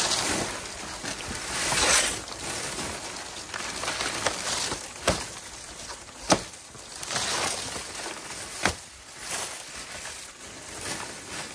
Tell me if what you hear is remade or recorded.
recorded